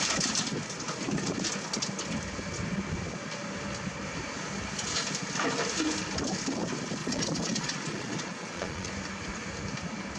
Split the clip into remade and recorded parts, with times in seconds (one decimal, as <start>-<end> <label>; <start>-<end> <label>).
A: 0.0-7.0 recorded; 7.0-8.9 remade; 8.9-10.2 recorded